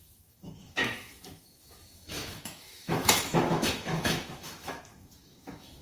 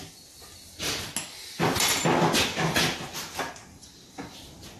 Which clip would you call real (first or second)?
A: second